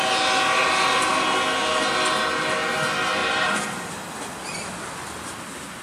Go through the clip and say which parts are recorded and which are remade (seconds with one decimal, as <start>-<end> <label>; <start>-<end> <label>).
0.0-3.2 recorded; 3.2-3.9 remade; 3.9-5.8 recorded